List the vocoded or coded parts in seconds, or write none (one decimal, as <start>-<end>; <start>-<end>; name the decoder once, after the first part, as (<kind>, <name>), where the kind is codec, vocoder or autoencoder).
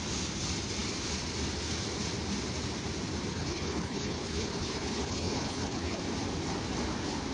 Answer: 3.3-6.0 (codec, HILCodec)